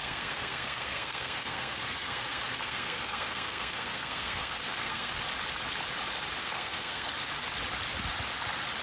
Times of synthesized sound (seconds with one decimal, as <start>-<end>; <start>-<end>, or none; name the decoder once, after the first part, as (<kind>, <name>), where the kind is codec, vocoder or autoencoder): 0.0-5.1 (codec, SNAC); 6.4-7.1